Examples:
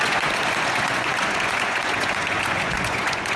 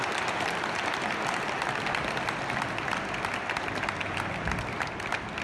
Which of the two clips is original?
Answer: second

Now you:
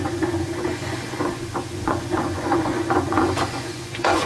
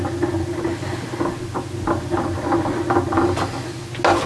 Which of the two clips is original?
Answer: second